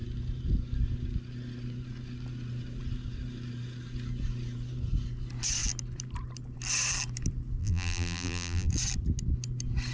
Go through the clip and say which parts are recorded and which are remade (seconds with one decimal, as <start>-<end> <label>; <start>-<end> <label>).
0.0-7.6 recorded; 7.6-8.7 remade; 8.7-9.9 recorded